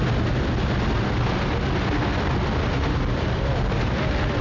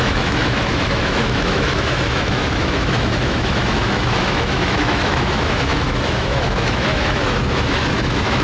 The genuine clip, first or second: first